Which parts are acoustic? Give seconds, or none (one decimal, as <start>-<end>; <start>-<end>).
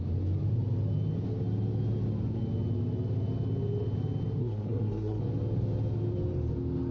0.0-4.4; 5.2-6.9